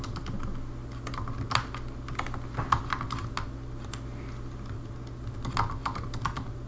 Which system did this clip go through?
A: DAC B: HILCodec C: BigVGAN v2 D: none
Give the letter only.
D